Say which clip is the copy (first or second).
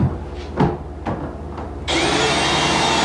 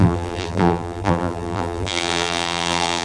second